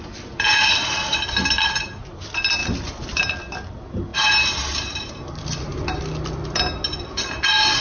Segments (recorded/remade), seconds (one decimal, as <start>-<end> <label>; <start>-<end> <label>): 0.0-2.6 recorded; 2.6-3.2 remade; 3.2-7.8 recorded